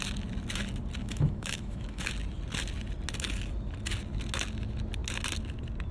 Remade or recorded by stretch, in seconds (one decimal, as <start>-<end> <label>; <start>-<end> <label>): 0.0-1.0 recorded; 1.0-2.1 remade; 2.1-5.9 recorded